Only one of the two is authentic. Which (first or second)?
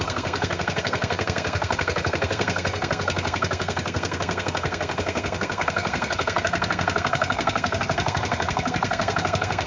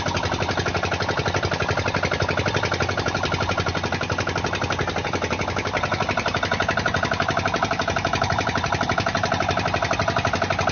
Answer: second